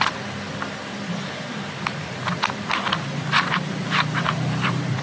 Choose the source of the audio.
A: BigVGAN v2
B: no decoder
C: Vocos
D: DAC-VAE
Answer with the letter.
A